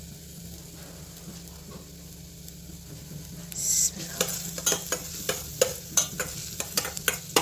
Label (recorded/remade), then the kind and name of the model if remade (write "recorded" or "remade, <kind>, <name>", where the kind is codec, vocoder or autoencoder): recorded